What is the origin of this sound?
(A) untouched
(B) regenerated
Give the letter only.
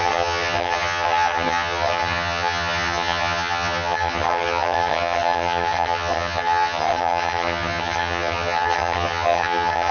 B